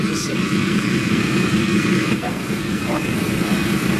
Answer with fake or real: fake